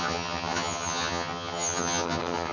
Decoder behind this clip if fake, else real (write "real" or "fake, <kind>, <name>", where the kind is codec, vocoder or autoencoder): fake, vocoder, HiFi-GAN